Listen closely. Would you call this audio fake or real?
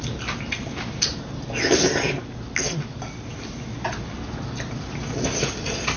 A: real